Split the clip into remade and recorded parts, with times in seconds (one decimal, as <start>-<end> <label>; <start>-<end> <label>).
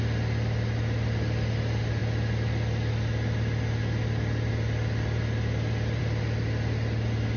0.0-7.4 recorded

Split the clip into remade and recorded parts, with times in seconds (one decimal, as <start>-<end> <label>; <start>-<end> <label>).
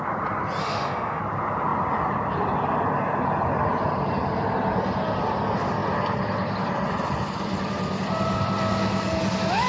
0.0-0.6 recorded; 0.6-1.2 remade; 1.2-9.7 recorded